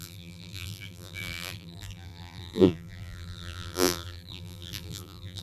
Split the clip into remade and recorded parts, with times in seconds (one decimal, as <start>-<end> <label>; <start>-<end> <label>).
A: 0.0-5.4 remade